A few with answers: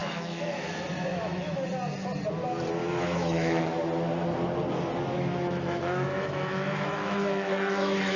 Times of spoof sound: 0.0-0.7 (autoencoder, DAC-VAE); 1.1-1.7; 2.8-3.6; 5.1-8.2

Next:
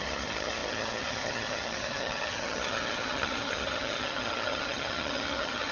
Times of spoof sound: 0.0-5.7 (vocoder, HiFi-GAN)

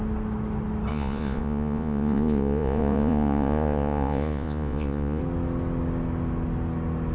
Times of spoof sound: 0.9-5.2 (vocoder, Vocos)

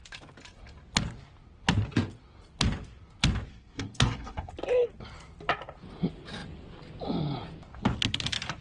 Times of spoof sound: 3.5-4.5 (codec, SNAC)

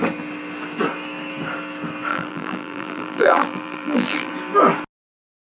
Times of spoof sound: 2.1-4.3 (vocoder, BigVGAN v2)

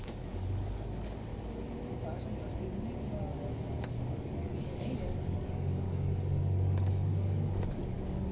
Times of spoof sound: 0.0-1.3 (codec, DAC); 4.1-8.3

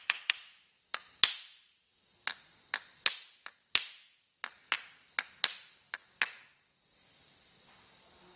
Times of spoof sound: none